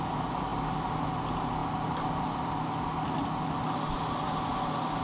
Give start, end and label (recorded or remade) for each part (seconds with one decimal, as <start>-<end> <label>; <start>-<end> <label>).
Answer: 0.0-0.5 remade; 0.5-1.1 recorded; 1.1-1.6 remade; 1.6-3.4 recorded; 3.4-5.0 remade